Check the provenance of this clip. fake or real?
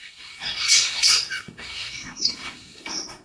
fake